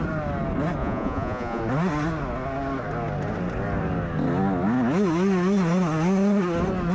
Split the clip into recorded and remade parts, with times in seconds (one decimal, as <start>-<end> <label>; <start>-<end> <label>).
0.0-0.8 recorded; 0.8-1.6 remade; 1.6-6.9 recorded

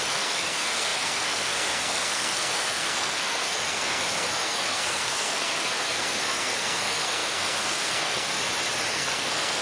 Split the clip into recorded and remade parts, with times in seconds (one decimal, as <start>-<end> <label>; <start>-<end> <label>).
0.0-8.4 remade; 8.4-8.9 recorded; 8.9-9.6 remade

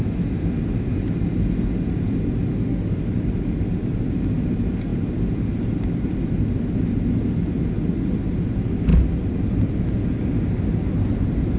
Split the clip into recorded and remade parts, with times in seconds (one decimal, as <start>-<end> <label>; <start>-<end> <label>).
0.0-2.5 recorded; 2.5-3.0 remade; 3.0-11.6 recorded